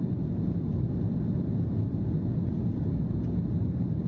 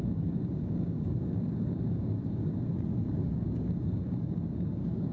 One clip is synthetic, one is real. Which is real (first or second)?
first